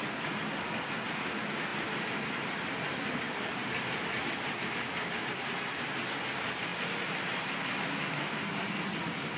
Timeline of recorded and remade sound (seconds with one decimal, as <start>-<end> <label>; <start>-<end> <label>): 0.0-6.7 recorded; 6.7-8.3 remade; 8.3-9.4 recorded